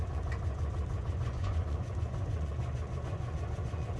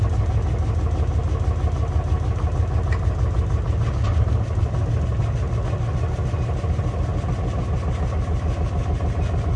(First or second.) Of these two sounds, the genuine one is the second